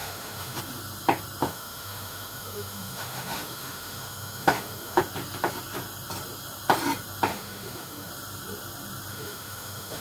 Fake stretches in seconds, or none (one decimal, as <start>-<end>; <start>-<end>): 0.0-0.6; 1.4-5.0; 7.3-8.1; 9.1-10.0

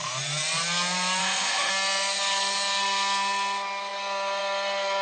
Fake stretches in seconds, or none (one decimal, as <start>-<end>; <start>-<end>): 1.2-1.7

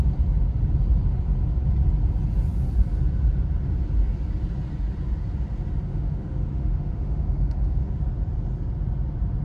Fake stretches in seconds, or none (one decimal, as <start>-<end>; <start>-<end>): 5.9-8.0